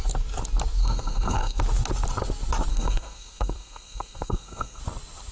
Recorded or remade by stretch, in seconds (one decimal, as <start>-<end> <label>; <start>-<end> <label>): 0.0-0.8 recorded; 0.8-1.6 remade; 1.6-2.7 recorded; 2.7-4.8 remade; 4.8-5.3 recorded